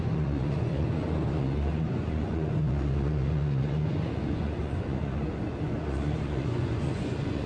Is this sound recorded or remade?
remade